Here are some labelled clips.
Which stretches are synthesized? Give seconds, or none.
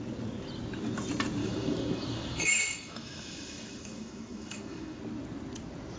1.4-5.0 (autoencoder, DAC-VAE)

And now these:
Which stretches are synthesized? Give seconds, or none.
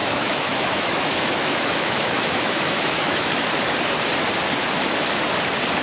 0.0-3.5 (autoencoder, DAC-VAE)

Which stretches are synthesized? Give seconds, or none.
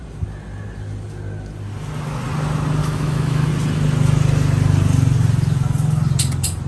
2.8-3.5 (autoencoder, DAC-VAE)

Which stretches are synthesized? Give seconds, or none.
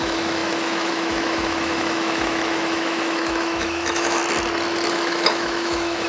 0.0-4.2 (autoencoder, DAC-VAE); 4.9-6.1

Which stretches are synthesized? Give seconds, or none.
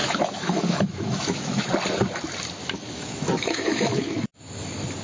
0.0-1.7 (autoencoder, DAC-VAE); 2.6-4.4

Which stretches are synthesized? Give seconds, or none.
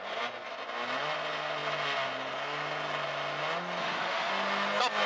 3.8-4.3 (autoencoder, DAC-VAE)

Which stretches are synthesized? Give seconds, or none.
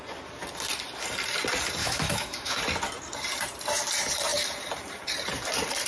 1.8-2.6 (autoencoder, DAC-VAE)